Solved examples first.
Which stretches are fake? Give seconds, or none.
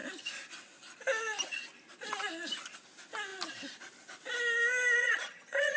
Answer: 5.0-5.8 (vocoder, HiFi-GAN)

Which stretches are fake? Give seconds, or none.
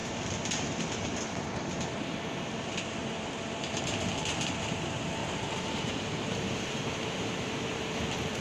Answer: 4.7-5.2 (vocoder, BigVGAN v2); 5.7-8.4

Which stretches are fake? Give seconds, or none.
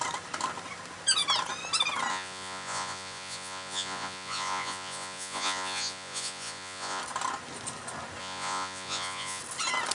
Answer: 2.1-7.0 (vocoder, Vocos); 8.2-9.4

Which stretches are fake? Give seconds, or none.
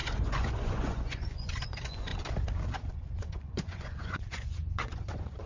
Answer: 0.0-2.1 (vocoder, Vocos); 2.9-5.5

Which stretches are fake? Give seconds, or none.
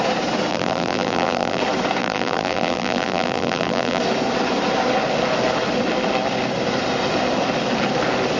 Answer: 0.5-1.6 (vocoder, BigVGAN v2); 2.0-4.0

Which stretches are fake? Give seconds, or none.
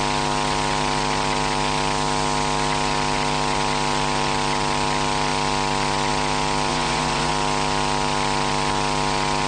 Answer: 6.7-7.3 (vocoder, Vocos)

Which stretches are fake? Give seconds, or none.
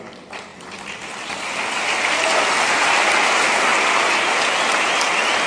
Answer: none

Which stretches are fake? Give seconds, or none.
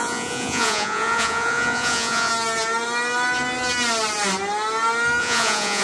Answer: 0.0-2.3 (vocoder, Vocos); 5.2-5.8